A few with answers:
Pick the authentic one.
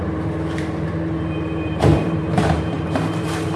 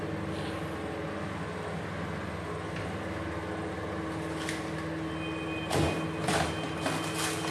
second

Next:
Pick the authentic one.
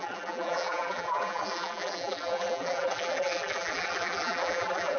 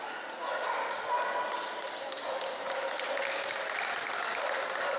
second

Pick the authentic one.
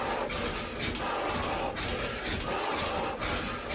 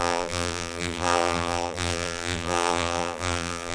first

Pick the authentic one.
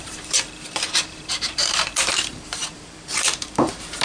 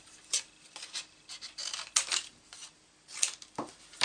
second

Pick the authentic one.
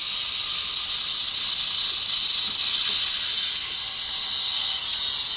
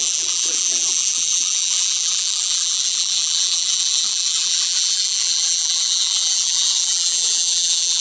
first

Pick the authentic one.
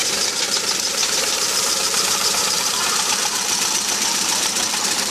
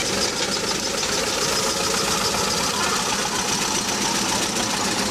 second